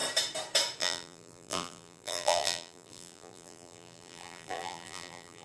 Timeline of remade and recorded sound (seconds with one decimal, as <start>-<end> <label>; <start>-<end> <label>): 0.0-0.8 recorded; 0.8-5.4 remade